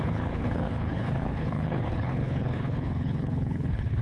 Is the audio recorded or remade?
remade